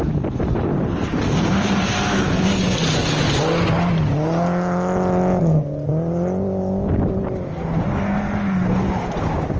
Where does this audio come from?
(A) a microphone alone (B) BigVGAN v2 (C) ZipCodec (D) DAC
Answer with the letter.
A